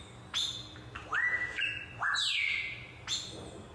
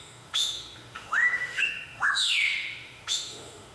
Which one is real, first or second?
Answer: first